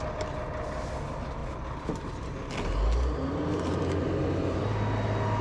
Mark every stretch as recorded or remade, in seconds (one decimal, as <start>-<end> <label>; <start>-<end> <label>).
0.0-5.4 recorded